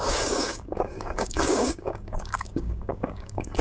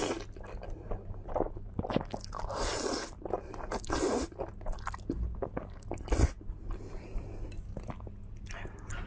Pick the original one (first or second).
second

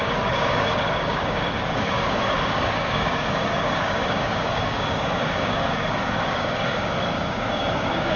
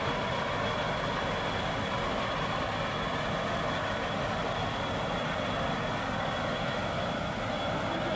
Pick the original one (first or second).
second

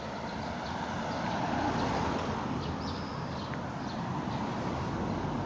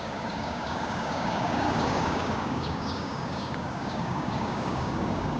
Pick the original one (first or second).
first